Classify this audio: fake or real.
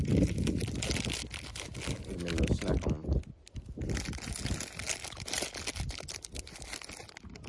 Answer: real